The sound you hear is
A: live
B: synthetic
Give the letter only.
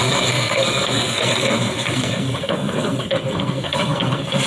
B